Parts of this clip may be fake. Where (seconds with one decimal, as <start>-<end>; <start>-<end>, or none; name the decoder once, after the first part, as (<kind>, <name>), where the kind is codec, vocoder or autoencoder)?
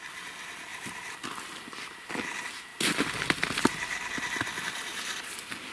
none